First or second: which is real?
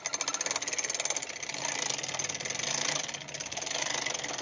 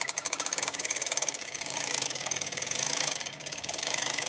first